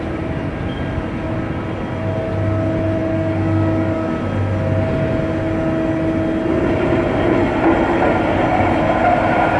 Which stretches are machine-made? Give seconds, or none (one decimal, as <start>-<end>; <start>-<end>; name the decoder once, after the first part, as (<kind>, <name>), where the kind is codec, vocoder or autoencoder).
3.0-4.2 (codec, DAC)